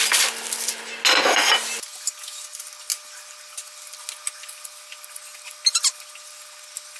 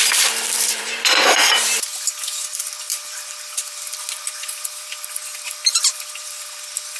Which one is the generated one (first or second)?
second